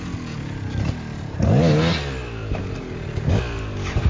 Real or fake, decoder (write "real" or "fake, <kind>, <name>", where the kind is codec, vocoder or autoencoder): real